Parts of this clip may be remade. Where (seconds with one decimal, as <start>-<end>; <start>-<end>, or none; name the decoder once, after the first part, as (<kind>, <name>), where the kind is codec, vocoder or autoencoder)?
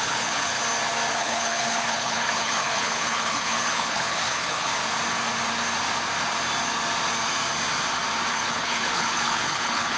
0.0-0.6 (codec, HILCodec); 1.1-4.7; 8.3-10.0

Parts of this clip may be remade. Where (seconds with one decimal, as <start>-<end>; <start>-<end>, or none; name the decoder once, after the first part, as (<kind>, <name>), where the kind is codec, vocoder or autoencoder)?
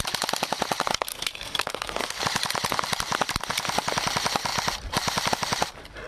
1.1-2.2 (codec, SNAC)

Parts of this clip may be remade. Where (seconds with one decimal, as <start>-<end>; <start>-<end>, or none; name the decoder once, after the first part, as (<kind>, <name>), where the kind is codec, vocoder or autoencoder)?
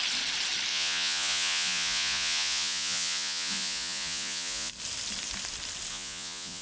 0.7-4.7 (vocoder, Vocos); 5.9-6.6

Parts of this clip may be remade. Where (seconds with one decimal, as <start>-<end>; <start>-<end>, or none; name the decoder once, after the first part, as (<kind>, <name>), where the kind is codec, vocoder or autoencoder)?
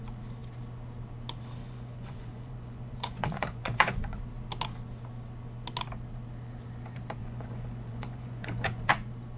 1.6-4.2 (vocoder, Vocos); 7.2-8.9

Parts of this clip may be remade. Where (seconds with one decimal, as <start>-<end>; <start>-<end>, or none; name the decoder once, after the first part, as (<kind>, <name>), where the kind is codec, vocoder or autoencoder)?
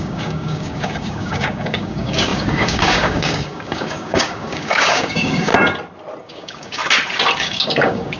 0.0-5.5 (codec, DAC); 6.2-6.8; 7.4-8.2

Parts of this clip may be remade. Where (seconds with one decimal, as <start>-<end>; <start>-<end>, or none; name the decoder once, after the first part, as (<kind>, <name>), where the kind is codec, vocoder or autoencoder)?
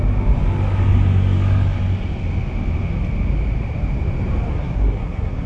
4.5-5.5 (codec, SNAC)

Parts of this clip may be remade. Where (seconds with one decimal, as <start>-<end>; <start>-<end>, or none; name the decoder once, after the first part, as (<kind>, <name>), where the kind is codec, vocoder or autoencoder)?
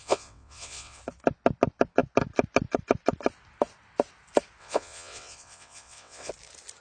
0.0-1.0 (vocoder, WaveNeXt); 4.6-6.3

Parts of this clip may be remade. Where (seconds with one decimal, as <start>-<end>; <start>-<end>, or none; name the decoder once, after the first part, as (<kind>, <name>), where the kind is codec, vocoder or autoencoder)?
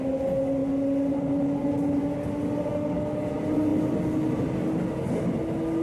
2.7-3.3 (codec, DAC)